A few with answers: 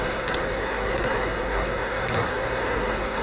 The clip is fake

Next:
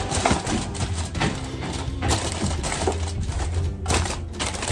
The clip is real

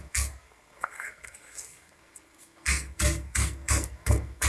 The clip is fake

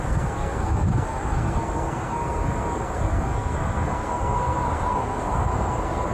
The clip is fake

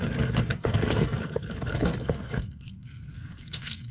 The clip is fake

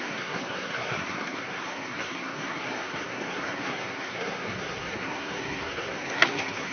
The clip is fake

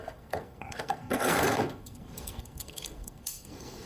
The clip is fake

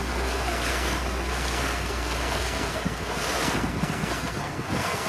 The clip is fake